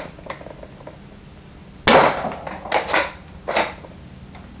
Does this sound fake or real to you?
real